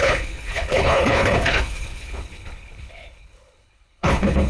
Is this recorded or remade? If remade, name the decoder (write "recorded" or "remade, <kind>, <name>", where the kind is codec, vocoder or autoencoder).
remade, codec, HILCodec